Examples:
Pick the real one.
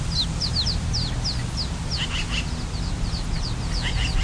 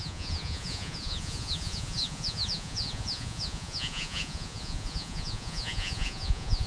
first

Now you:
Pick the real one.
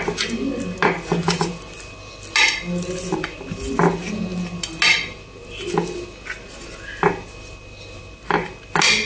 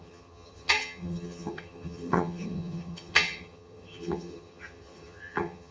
first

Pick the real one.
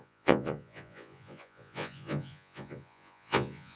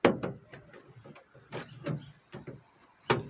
second